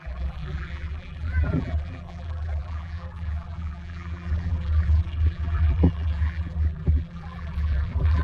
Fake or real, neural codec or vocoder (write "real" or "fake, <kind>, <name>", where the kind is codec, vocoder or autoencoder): fake, vocoder, BigVGAN v2